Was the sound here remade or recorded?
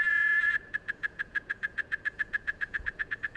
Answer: remade